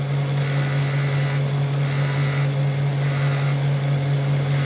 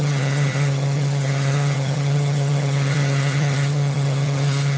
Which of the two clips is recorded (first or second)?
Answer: first